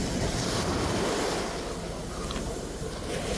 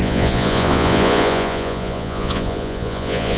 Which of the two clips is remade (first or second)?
second